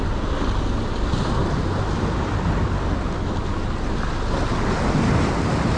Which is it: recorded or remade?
recorded